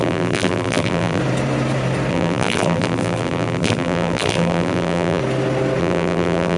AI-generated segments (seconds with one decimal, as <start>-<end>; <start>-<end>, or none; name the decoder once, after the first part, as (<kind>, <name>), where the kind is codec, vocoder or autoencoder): 0.0-1.2 (vocoder, BigVGAN v2); 2.1-5.2; 5.8-6.6